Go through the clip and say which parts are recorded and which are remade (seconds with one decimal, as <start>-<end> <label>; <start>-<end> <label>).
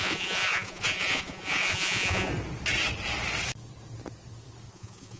0.0-2.3 remade; 2.3-4.7 recorded; 4.7-5.2 remade